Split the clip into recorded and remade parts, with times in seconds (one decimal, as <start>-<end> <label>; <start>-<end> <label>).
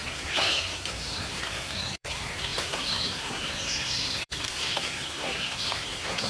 0.0-6.3 remade